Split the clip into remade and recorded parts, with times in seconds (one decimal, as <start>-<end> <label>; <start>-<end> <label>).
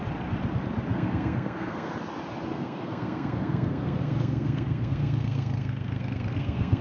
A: 0.0-0.9 recorded; 0.9-1.9 remade; 1.9-2.5 recorded; 2.5-6.8 remade